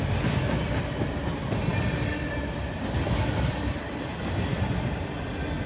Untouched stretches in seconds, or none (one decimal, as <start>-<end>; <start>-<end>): 0.0-5.7